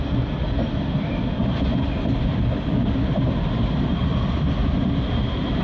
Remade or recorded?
recorded